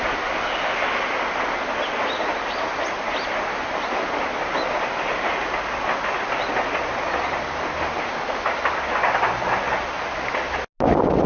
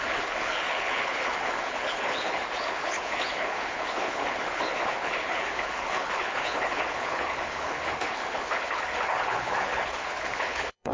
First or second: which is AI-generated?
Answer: second